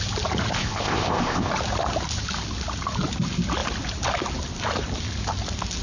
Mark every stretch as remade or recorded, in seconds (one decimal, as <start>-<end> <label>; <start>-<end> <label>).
0.0-0.6 recorded; 0.6-1.5 remade; 1.5-5.8 recorded